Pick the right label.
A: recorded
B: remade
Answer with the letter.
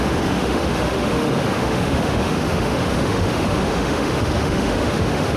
B